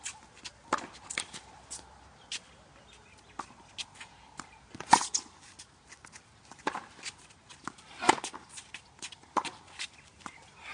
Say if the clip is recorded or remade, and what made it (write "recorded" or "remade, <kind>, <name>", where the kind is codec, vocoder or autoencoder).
recorded